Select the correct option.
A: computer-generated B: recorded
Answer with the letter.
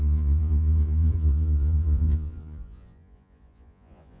A